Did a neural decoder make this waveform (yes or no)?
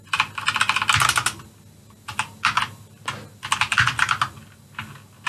no